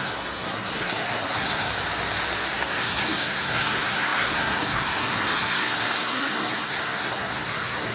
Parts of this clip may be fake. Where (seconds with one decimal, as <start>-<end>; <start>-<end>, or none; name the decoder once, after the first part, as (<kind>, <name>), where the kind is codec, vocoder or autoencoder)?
0.0-1.7 (codec, SNAC); 2.5-7.9